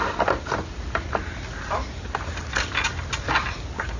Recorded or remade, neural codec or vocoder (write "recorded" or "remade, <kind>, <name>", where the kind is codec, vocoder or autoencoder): recorded